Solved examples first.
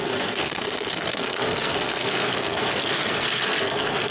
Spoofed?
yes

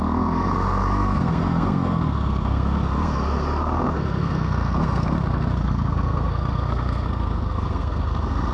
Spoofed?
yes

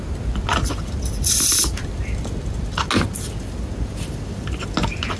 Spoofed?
no